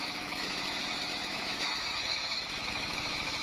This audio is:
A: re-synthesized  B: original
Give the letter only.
A